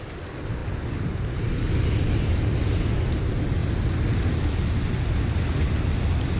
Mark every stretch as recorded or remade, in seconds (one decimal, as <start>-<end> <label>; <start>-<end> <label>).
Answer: 0.0-6.4 recorded